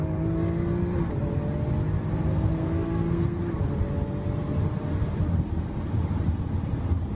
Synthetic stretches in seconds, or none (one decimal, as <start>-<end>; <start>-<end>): 2.3-3.4